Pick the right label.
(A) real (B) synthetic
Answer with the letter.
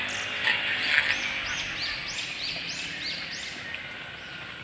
A